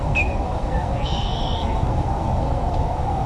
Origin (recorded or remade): remade